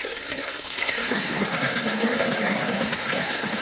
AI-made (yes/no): yes